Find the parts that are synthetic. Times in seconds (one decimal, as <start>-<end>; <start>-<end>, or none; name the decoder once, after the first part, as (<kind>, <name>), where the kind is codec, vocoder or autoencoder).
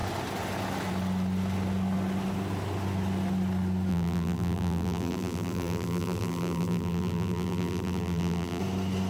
3.9-8.6 (vocoder, BigVGAN v2)